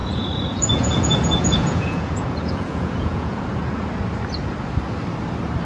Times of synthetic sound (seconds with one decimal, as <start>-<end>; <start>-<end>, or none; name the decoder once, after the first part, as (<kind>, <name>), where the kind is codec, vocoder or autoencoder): 0.0-3.4 (vocoder, Vocos)